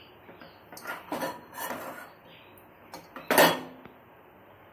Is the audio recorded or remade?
recorded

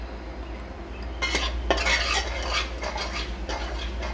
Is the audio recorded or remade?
recorded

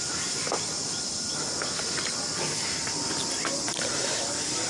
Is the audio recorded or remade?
recorded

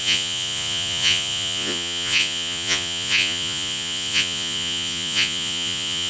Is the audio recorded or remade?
remade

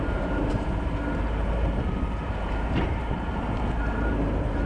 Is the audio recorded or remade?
remade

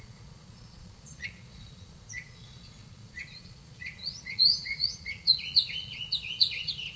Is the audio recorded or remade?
remade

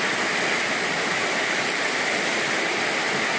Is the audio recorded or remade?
recorded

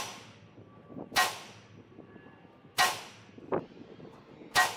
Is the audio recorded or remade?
recorded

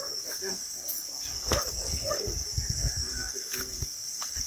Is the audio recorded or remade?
remade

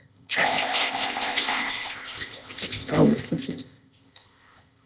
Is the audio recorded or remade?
remade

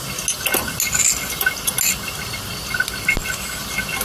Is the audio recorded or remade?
recorded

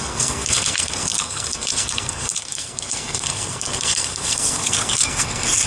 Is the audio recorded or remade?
remade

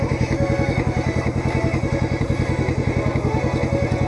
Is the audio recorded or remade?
recorded